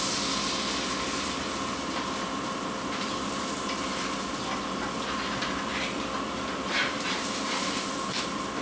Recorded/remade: recorded